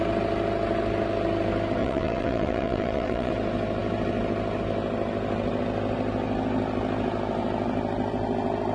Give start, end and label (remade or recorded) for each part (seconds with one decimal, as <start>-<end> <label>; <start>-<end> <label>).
0.0-1.8 recorded; 1.8-3.3 remade; 3.3-8.7 recorded